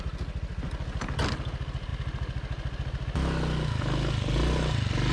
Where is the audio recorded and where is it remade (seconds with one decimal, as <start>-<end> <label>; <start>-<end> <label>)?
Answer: 0.0-5.1 recorded